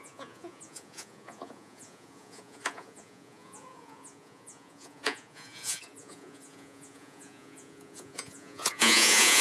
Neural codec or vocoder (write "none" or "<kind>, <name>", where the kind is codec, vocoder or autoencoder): vocoder, Vocos